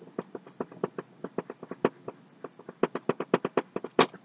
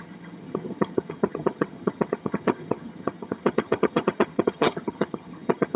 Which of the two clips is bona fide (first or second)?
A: first